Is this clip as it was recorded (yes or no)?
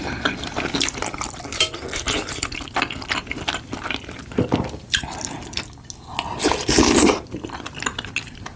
yes